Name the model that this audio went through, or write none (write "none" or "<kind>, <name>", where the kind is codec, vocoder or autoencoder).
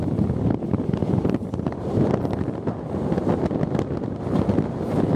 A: none